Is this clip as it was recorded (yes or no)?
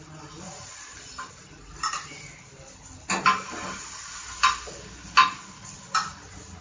yes